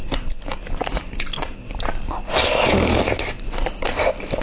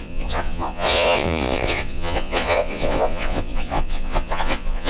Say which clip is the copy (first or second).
second